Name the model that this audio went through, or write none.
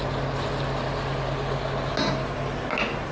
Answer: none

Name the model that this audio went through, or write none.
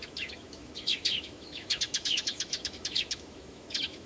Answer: autoencoder, DAC-VAE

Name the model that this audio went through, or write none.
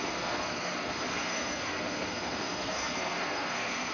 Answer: codec, SNAC